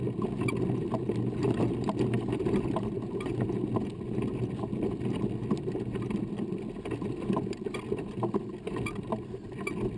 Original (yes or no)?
yes